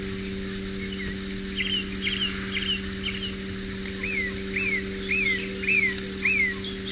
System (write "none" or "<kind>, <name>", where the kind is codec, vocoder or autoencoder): none